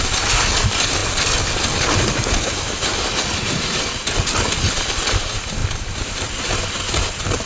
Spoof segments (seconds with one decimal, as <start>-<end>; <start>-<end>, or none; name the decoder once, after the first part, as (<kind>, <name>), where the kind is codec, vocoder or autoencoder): none